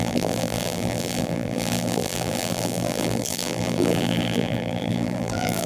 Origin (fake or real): fake